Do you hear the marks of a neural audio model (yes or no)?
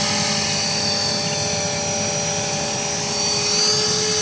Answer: no